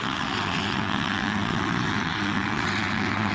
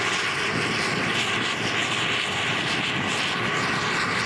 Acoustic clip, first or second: second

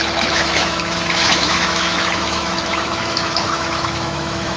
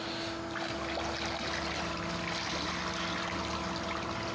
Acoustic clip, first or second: second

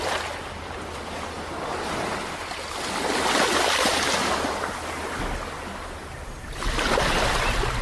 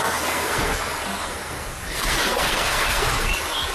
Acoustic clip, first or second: first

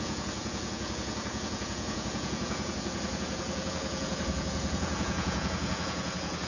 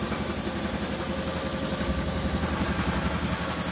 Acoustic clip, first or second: second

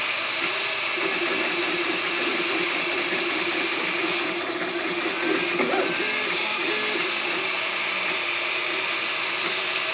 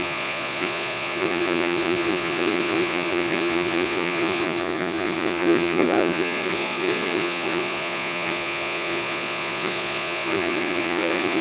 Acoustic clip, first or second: first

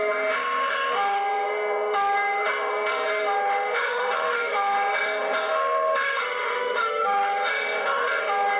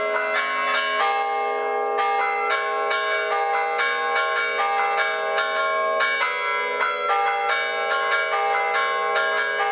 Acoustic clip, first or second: second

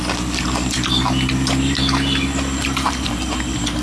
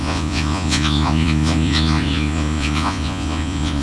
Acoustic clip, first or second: first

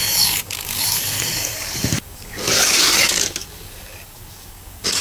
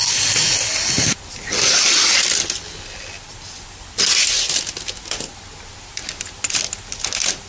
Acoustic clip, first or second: second